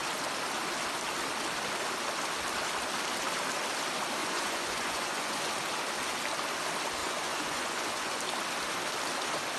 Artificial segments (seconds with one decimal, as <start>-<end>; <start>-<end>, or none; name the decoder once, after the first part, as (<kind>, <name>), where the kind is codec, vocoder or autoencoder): 4.2-5.5 (vocoder, Vocos); 7.0-8.2